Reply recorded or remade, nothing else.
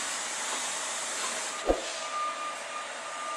recorded